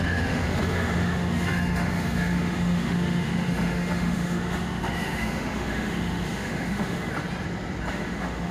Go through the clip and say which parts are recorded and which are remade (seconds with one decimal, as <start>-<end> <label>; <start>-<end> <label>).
0.0-7.1 remade; 7.1-7.9 recorded; 7.9-8.5 remade